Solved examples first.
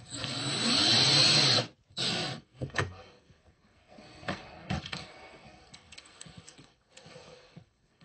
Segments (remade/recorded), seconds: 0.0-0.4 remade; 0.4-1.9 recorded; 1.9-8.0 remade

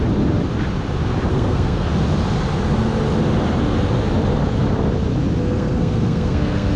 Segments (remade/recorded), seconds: 0.0-1.3 recorded; 1.3-1.9 remade; 1.9-5.4 recorded; 5.4-6.8 remade

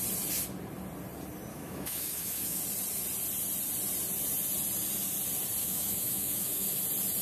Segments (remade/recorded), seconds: 0.0-1.5 recorded; 1.5-2.6 remade; 2.6-5.6 recorded; 5.6-6.8 remade; 6.8-7.2 recorded